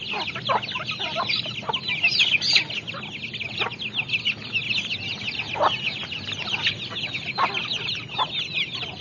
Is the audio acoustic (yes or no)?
yes